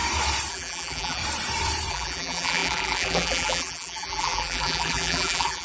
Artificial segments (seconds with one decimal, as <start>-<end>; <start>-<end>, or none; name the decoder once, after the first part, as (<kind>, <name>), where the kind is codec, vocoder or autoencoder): 0.5-1.2 (vocoder, BigVGAN v2); 1.9-5.6